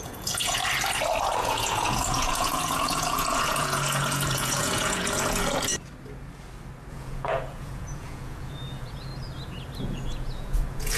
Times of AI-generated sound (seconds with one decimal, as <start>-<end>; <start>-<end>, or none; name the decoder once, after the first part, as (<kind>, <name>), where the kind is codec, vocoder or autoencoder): 0.0-0.6 (vocoder, Vocos); 1.4-5.7; 6.9-9.1; 9.8-11.0